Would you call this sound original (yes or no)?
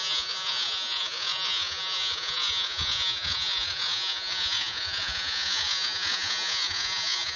no